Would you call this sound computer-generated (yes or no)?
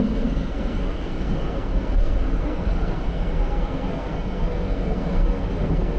yes